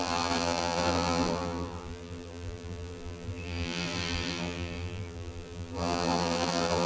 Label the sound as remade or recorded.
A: remade